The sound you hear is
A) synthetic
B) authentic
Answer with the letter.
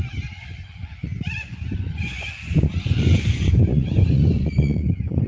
A